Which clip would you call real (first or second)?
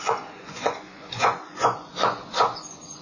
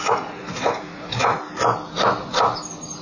second